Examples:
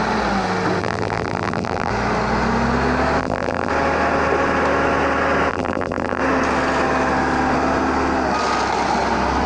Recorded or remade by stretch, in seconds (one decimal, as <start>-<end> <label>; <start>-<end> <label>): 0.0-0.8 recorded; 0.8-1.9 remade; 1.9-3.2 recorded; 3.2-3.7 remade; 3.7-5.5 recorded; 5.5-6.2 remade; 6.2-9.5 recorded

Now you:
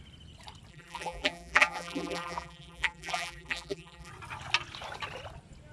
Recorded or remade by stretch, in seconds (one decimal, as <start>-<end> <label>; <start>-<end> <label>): 0.0-0.7 recorded; 0.7-4.1 remade; 4.1-5.7 recorded

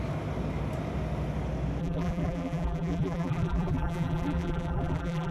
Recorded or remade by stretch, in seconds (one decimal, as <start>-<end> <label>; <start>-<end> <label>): 0.0-1.8 recorded; 1.8-5.3 remade

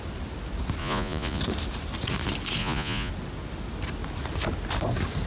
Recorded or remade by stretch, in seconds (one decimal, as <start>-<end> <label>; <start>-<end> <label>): 0.0-0.8 recorded; 0.8-1.4 remade; 1.4-2.6 recorded; 2.6-3.1 remade; 3.1-5.3 recorded

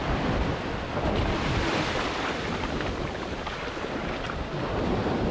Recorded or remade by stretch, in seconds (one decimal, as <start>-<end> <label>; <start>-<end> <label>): 0.0-5.3 remade

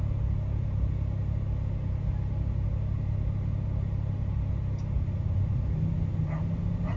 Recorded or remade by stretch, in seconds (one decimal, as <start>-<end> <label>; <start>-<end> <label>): 0.0-7.0 recorded

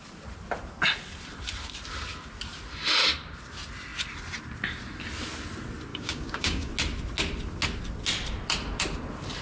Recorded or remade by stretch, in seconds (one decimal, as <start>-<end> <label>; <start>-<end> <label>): 0.0-5.9 recorded; 5.9-6.7 remade; 6.7-9.4 recorded